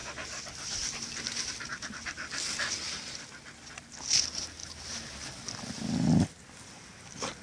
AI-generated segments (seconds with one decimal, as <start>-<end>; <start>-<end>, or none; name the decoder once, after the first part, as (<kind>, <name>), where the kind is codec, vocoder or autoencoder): none